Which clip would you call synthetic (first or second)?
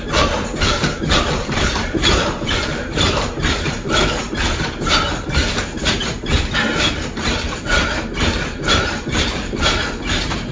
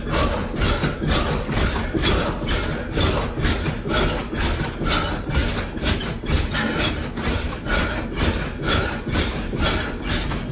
first